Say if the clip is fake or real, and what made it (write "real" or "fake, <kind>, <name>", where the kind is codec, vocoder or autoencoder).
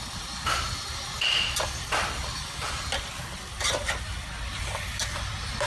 real